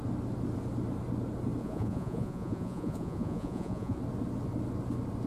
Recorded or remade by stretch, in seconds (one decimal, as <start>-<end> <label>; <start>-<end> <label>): 0.0-1.6 recorded; 1.6-4.0 remade; 4.0-5.3 recorded